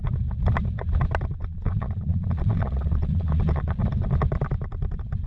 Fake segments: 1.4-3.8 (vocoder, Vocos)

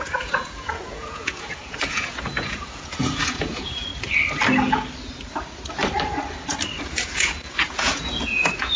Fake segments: 0.0-3.9 (vocoder, Vocos); 6.8-8.8

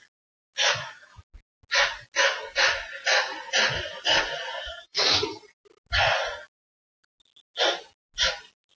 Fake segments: 0.6-1.2 (autoencoder, DAC-VAE); 4.6-5.1

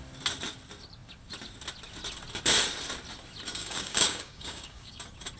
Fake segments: 3.6-5.0 (codec, DAC)

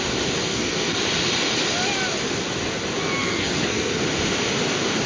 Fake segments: 0.5-1.0 (codec, SNAC); 3.2-4.0